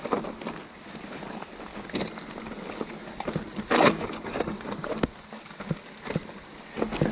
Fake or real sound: real